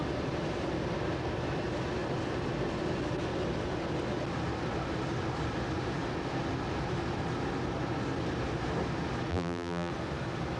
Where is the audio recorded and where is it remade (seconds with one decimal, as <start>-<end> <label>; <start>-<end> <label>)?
0.0-9.3 recorded; 9.3-9.9 remade; 9.9-10.6 recorded

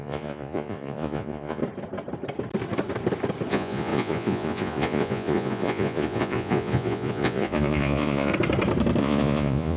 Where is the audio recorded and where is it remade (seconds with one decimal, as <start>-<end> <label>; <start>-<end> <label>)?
0.0-1.6 remade; 1.6-3.5 recorded; 3.5-8.3 remade; 8.3-9.0 recorded; 9.0-9.8 remade

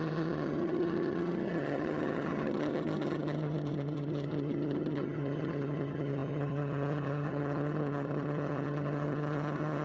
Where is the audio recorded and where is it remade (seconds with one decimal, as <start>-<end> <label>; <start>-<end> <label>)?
0.0-9.8 remade